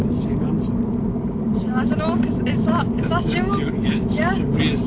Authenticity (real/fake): real